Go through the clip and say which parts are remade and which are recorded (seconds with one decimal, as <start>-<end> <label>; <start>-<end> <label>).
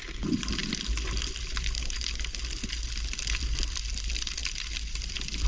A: 0.0-5.5 recorded